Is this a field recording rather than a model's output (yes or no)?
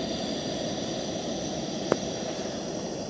yes